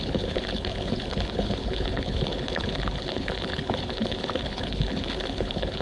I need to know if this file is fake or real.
fake